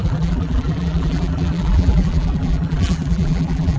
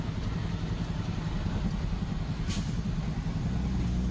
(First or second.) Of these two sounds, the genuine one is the second